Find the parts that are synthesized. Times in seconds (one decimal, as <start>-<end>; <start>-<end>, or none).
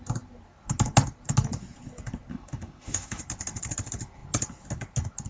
2.3-3.2